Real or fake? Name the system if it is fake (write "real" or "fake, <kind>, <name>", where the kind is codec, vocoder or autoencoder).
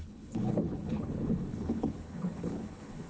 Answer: fake, codec, HILCodec